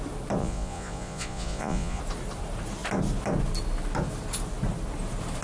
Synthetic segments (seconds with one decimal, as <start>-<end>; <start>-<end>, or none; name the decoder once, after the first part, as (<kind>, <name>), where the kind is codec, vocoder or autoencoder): 0.4-2.0 (vocoder, Vocos)